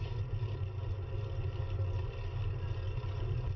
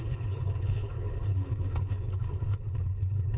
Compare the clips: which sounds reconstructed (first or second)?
second